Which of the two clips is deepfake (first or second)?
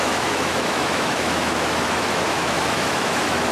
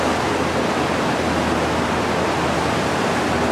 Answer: first